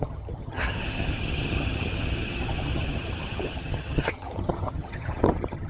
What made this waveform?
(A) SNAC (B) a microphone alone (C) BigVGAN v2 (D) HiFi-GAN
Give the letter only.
D